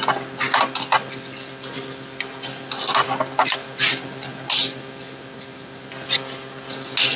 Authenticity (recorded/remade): recorded